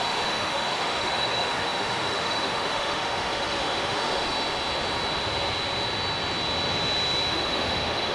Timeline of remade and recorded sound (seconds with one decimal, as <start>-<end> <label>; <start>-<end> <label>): 0.0-4.3 remade; 4.3-7.3 recorded; 7.3-8.1 remade